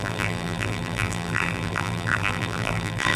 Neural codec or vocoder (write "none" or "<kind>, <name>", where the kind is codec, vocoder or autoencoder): vocoder, BigVGAN v2